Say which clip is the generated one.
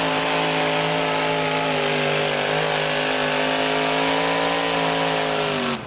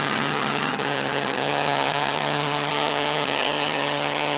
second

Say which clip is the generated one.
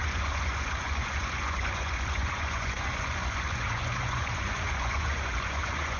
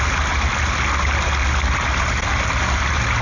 first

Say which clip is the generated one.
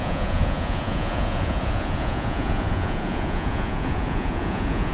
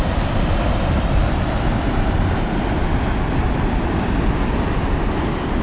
first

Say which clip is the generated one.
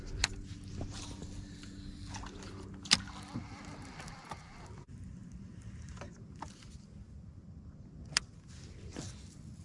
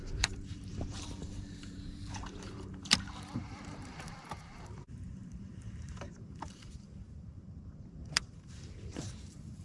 second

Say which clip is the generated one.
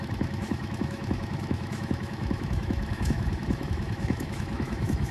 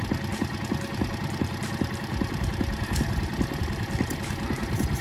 first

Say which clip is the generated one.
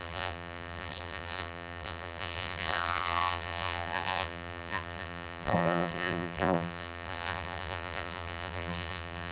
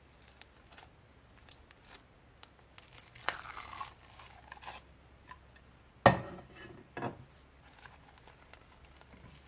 first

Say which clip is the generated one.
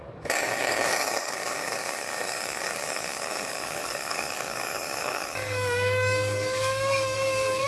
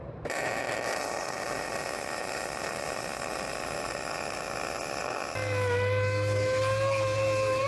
first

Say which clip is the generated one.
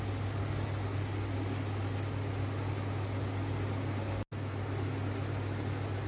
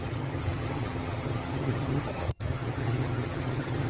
second